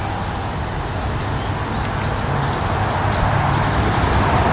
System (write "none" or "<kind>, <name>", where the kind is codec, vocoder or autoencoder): none